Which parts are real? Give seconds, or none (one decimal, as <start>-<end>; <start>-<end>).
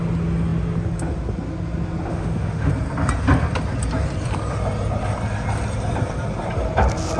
0.0-2.1; 2.7-7.2